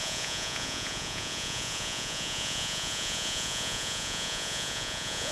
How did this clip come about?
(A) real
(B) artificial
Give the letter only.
B